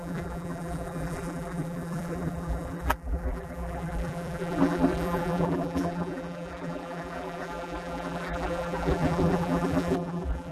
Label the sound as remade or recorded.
remade